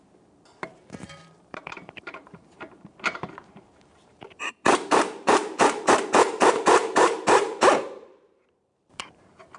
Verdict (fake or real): fake